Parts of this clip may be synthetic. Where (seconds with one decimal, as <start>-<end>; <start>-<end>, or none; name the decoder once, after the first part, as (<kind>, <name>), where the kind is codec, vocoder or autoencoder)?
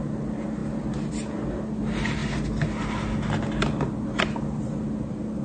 none